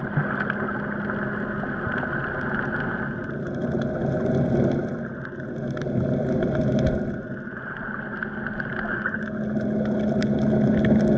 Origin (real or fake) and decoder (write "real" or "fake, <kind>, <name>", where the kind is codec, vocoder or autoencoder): real